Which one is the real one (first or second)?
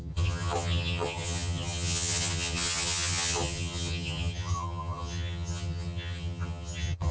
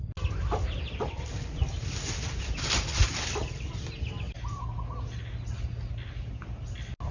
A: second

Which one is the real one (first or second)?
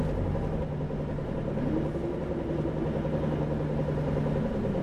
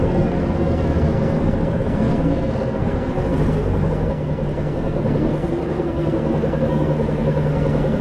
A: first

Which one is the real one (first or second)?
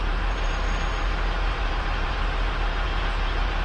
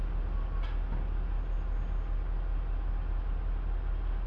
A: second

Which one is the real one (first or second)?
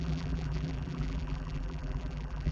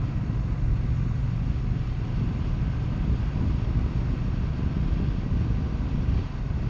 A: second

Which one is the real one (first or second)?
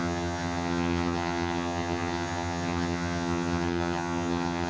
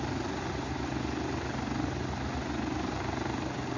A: second